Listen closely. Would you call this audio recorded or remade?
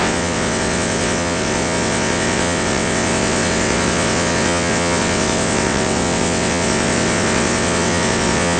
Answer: remade